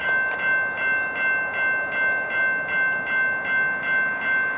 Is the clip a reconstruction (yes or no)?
no